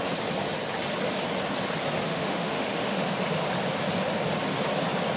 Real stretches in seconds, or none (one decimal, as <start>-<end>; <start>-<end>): 0.0-2.1; 3.0-5.2